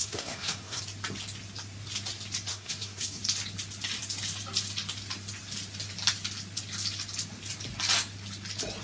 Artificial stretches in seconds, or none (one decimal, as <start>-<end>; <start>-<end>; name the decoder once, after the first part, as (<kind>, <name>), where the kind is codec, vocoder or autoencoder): 0.0-0.8 (codec, SNAC); 2.5-3.2